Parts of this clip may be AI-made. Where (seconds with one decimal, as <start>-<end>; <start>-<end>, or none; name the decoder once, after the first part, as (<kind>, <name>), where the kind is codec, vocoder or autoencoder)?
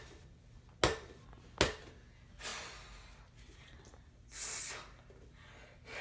none